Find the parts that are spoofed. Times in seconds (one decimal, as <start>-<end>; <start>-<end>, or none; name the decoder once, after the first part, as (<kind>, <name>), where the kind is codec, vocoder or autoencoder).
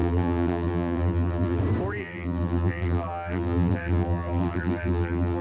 0.0-1.6 (vocoder, BigVGAN v2); 2.0-5.4